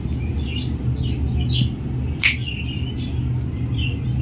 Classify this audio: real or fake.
real